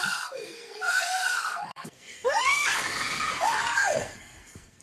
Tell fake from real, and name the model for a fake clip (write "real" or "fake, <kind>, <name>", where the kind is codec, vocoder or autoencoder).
fake, codec, SNAC